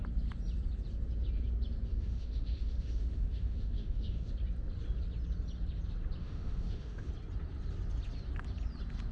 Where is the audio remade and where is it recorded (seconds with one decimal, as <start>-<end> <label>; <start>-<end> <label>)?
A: 0.0-1.9 recorded; 1.9-4.3 remade; 4.3-6.2 recorded; 6.2-7.1 remade; 7.1-9.1 recorded